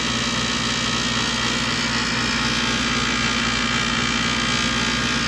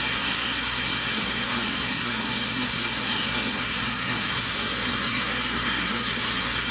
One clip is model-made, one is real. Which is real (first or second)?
first